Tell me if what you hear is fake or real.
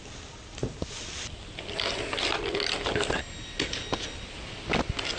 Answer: real